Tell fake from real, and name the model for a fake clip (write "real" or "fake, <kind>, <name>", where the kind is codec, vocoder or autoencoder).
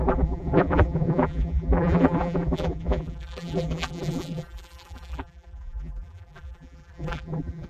fake, vocoder, BigVGAN v2